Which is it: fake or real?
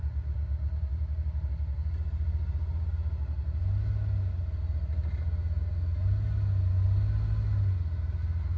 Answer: real